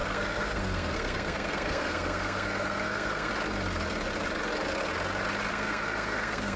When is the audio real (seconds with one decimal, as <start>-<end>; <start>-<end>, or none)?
3.3-5.5